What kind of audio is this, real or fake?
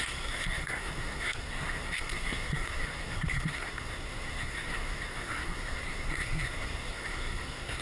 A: fake